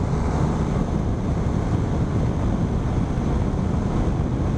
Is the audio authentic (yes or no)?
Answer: yes